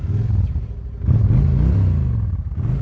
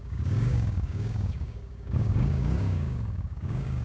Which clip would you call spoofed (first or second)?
second